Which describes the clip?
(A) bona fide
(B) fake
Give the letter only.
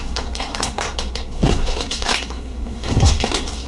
B